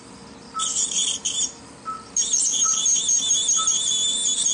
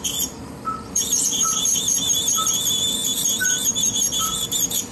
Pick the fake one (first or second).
second